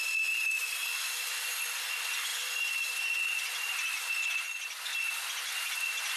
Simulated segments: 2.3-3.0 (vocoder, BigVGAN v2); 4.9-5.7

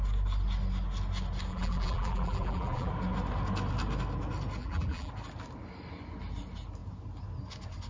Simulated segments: 1.5-2.9 (vocoder, BigVGAN v2); 4.6-5.1

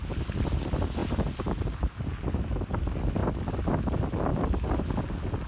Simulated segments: 1.0-2.1 (vocoder, BigVGAN v2)

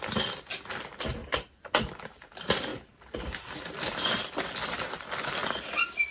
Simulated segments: 1.2-2.3 (vocoder, BigVGAN v2); 2.7-4.3; 5.4-6.1